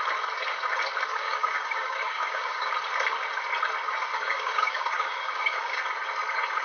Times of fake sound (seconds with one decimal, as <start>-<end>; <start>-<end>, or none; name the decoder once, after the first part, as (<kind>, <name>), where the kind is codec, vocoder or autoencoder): 1.1-2.7 (codec, DAC); 4.1-5.8